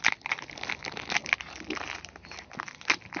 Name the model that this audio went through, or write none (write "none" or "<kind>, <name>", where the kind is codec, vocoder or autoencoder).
none